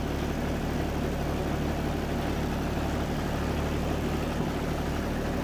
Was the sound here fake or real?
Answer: real